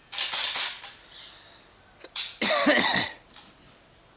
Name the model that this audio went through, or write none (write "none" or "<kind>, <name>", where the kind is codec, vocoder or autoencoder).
none